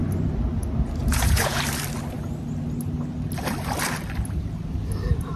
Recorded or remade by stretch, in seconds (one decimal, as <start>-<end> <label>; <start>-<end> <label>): 0.0-1.0 recorded; 1.0-1.6 remade; 1.6-5.4 recorded